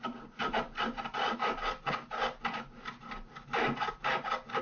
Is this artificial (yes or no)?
no